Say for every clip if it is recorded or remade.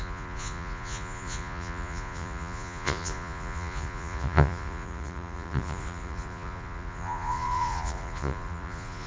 remade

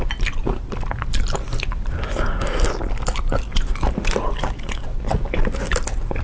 recorded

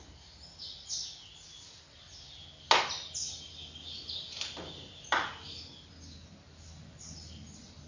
recorded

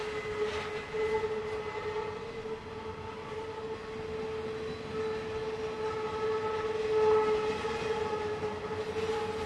recorded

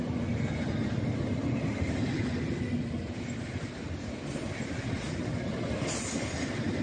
recorded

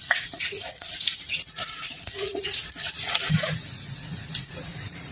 remade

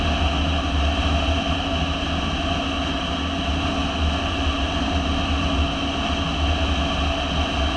recorded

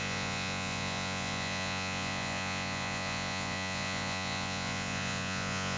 remade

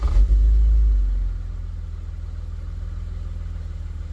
recorded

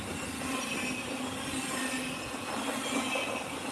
recorded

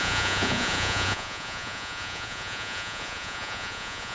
remade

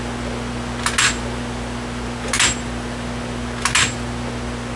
recorded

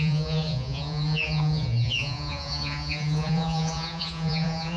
remade